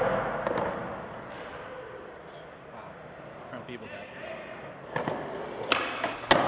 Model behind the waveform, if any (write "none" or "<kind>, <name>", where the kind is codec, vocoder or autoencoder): none